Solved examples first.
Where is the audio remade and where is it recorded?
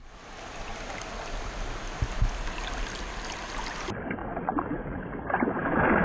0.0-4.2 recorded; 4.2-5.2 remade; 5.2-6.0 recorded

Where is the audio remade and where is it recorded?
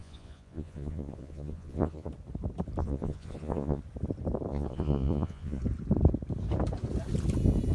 0.0-2.1 remade; 2.1-2.8 recorded; 2.8-3.8 remade; 3.8-4.5 recorded; 4.5-5.6 remade; 5.6-7.7 recorded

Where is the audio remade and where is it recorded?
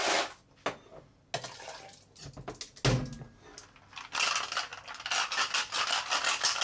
0.0-6.6 recorded